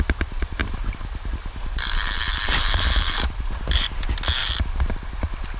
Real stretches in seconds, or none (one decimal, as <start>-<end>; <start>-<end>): 0.0-0.6; 4.0-4.4; 5.0-5.6

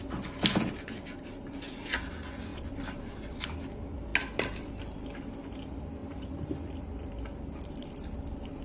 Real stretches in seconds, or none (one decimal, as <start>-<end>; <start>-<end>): 0.0-2.5; 3.5-6.0

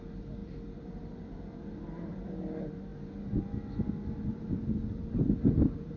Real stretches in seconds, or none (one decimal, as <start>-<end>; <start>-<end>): 0.0-0.4; 2.3-6.0

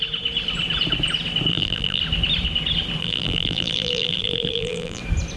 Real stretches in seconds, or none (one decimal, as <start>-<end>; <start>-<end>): 0.0-1.5; 2.0-3.0; 5.0-5.4